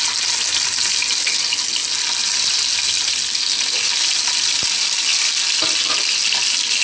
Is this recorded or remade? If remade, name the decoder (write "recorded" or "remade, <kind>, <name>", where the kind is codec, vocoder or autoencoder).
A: recorded